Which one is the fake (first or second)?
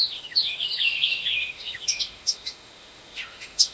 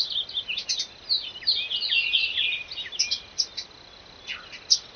first